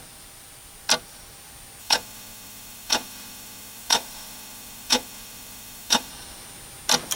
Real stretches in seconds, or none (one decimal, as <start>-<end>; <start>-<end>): 0.0-1.8; 6.1-7.2